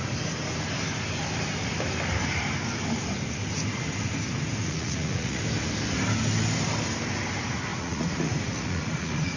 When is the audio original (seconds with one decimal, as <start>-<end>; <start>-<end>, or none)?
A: 0.0-4.6; 5.4-7.7